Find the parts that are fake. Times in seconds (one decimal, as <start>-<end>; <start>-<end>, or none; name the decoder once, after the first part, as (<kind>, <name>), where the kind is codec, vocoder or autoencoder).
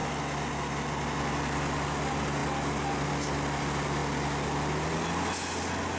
none